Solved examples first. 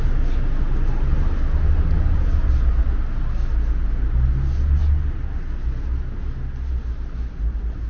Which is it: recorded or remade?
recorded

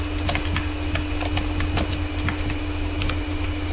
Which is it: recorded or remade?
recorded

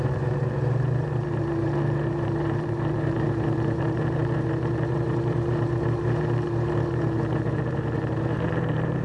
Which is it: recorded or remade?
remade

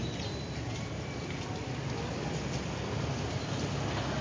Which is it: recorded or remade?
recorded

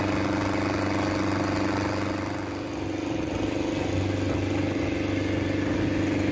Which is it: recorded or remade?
recorded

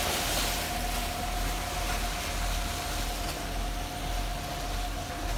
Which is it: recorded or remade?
recorded